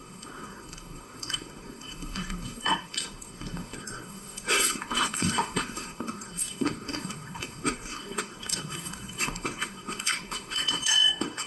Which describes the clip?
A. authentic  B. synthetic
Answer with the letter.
B